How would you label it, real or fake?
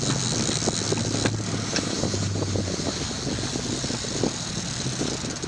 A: real